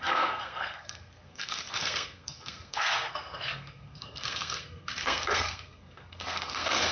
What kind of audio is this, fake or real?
fake